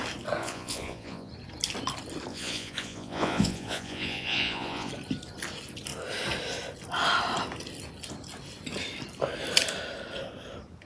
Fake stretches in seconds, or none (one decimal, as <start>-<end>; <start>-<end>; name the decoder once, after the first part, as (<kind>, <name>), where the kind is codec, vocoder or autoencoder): 0.4-1.3 (vocoder, Vocos); 2.3-4.9